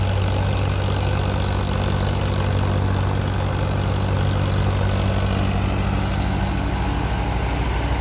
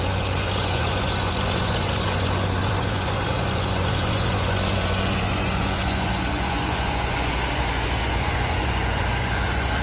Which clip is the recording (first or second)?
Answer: first